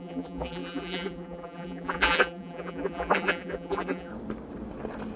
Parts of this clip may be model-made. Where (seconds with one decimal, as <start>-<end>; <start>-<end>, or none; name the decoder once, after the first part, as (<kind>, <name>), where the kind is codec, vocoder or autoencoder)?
0.0-4.1 (vocoder, BigVGAN v2)